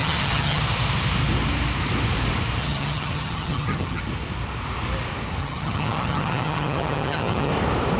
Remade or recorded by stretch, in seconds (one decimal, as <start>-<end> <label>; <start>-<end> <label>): 0.0-0.6 remade; 0.6-2.6 recorded; 2.6-4.0 remade; 4.0-5.4 recorded; 5.4-7.5 remade; 7.5-8.0 recorded